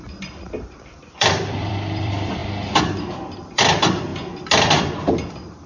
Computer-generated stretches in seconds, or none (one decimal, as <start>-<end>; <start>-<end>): 0.0-2.4; 3.5-4.1; 5.3-5.7